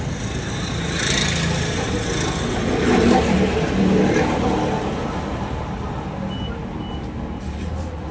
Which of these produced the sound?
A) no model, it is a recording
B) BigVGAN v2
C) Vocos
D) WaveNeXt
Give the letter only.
A